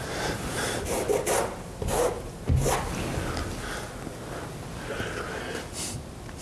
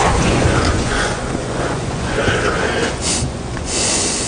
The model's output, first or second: second